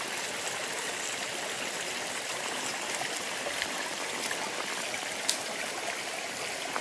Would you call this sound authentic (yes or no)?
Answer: yes